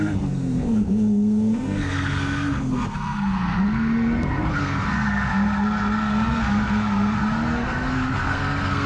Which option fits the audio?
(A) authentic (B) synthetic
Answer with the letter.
B